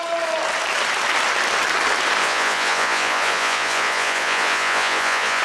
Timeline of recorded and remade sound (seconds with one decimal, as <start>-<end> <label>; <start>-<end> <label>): 0.0-2.2 recorded; 2.2-5.4 remade